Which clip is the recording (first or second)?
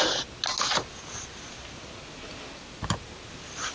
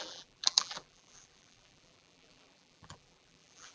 first